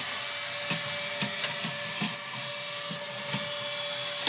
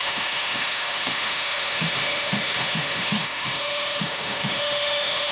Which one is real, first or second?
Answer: first